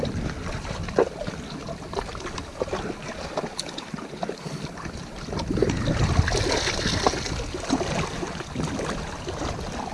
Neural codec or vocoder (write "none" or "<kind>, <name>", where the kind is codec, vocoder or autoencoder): none